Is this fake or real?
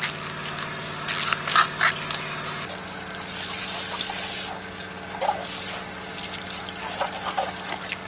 real